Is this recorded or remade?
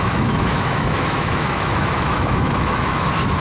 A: remade